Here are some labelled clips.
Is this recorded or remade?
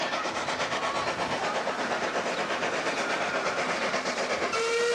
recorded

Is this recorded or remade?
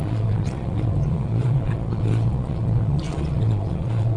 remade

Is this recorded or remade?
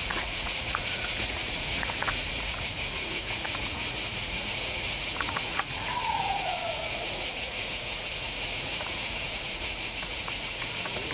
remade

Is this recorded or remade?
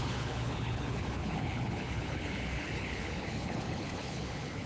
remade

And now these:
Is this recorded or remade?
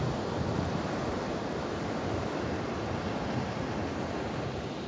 recorded